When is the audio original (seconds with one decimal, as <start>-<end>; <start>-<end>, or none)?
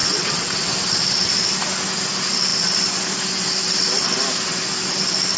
0.7-5.4